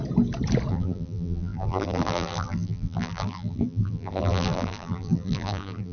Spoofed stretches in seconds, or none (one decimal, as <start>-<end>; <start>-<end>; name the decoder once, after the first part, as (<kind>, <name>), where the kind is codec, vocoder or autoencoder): 0.7-5.9 (vocoder, BigVGAN v2)